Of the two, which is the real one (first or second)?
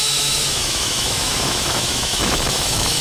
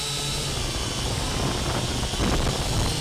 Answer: second